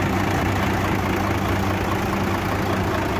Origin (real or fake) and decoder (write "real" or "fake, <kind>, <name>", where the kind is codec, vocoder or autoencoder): real